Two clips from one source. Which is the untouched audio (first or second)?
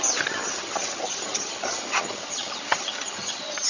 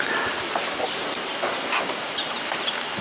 second